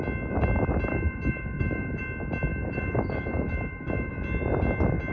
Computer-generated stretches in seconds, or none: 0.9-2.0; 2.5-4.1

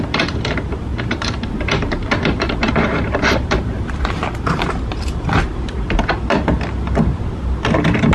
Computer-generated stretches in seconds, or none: 0.9-4.8